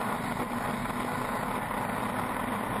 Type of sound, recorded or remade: recorded